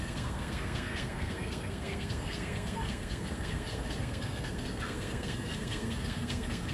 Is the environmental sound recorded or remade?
remade